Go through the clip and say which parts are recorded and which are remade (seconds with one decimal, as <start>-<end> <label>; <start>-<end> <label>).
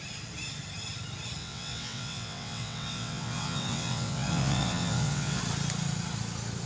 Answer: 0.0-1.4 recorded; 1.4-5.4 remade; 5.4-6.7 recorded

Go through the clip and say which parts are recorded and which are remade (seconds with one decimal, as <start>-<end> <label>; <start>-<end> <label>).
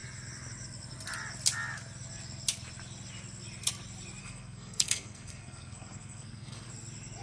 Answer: 0.0-4.2 recorded; 4.2-6.7 remade; 6.7-7.2 recorded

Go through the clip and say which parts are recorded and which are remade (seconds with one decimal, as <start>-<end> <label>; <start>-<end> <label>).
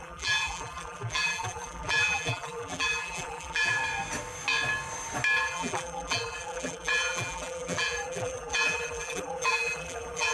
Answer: 0.0-3.8 remade; 3.8-5.4 recorded; 5.4-10.3 remade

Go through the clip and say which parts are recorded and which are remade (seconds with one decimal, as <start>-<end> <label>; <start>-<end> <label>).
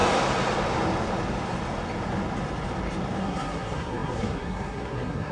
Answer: 0.0-3.2 recorded; 3.2-5.3 remade